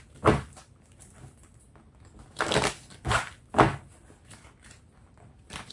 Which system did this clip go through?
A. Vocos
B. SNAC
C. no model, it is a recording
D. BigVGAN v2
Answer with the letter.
D